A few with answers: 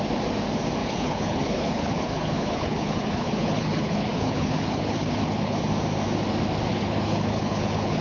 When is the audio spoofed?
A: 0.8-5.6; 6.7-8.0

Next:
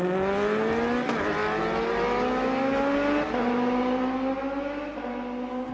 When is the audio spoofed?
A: none

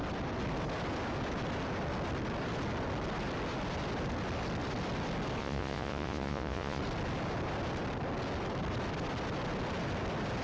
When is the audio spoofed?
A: 5.4-6.8

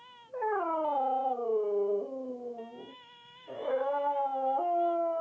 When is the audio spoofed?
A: 2.9-3.9

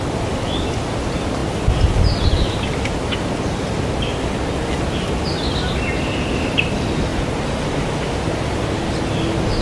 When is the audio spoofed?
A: none